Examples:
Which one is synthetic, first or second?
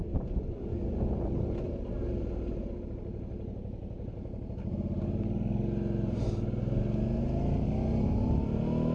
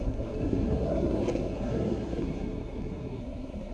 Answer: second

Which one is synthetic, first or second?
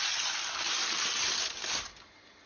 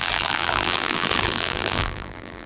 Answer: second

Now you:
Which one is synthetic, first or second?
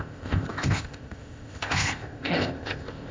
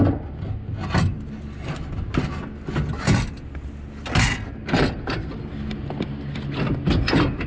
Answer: first